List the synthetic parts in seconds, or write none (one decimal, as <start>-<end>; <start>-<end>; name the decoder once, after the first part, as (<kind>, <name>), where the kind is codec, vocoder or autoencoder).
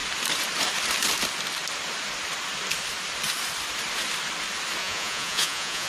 4.8-5.9 (vocoder, Vocos)